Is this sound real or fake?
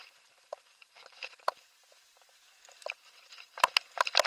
real